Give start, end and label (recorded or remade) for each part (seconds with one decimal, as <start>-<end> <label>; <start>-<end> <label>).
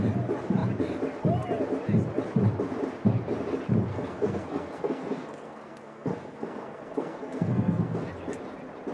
0.0-3.9 recorded; 3.9-8.1 remade; 8.1-8.9 recorded